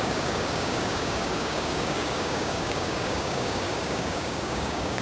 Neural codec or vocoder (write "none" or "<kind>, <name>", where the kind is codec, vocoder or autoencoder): codec, DAC